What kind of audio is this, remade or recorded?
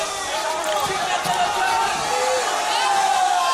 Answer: recorded